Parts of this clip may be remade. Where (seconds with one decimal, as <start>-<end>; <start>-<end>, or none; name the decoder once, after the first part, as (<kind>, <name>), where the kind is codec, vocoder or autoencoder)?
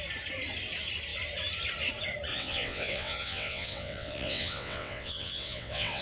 2.3-6.0 (vocoder, WaveNeXt)